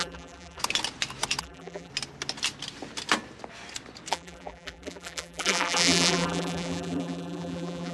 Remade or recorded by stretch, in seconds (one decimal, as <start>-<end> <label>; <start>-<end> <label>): 0.0-0.6 remade; 0.6-1.4 recorded; 1.4-1.9 remade; 1.9-4.1 recorded; 4.1-7.9 remade